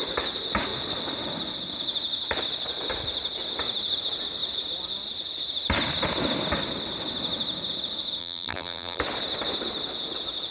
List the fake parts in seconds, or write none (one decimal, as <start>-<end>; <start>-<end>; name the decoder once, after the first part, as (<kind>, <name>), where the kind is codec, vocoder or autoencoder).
8.2-9.0 (vocoder, BigVGAN v2)